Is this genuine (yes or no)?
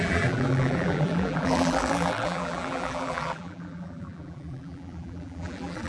no